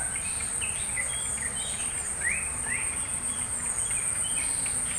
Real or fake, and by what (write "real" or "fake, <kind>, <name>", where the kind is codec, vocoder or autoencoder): real